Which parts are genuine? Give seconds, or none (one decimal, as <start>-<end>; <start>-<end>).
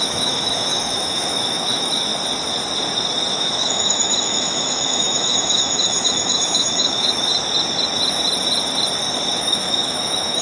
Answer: 2.1-3.3; 7.3-9.4